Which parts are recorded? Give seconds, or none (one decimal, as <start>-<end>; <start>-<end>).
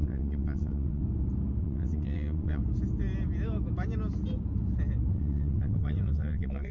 1.0-1.6; 2.6-5.1